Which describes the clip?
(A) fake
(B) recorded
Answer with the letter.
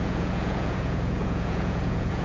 A